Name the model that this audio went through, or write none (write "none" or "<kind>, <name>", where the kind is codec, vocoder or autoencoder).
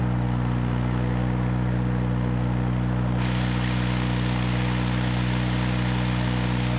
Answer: none